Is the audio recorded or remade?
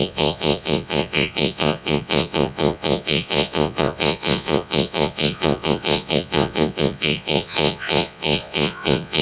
remade